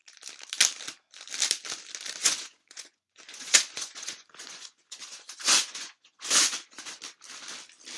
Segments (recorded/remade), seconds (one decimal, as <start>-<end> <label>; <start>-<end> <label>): 0.0-2.2 recorded; 2.2-7.0 remade; 7.0-8.0 recorded